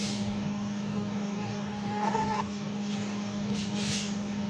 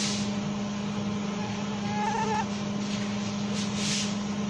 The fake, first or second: first